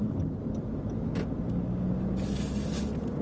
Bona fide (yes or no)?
yes